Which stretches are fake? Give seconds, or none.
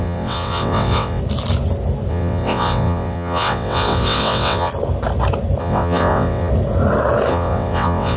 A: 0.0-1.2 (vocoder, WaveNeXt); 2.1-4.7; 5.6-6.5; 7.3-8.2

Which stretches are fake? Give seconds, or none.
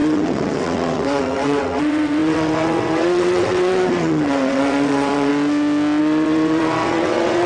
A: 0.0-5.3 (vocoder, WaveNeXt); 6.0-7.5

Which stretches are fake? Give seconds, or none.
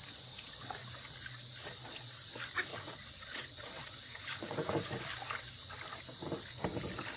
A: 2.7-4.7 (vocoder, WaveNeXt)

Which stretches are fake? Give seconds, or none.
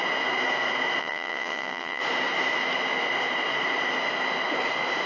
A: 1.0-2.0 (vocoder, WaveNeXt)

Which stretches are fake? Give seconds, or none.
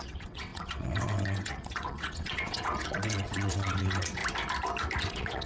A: 0.0-4.2 (vocoder, WaveNeXt); 5.0-5.5